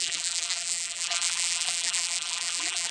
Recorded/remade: remade